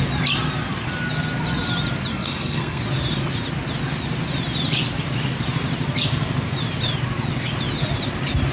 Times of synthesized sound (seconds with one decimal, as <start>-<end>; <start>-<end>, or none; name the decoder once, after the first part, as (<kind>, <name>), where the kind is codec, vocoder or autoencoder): 2.1-2.8 (codec, SNAC)